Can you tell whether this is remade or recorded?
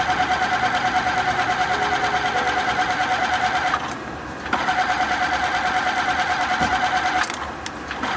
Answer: recorded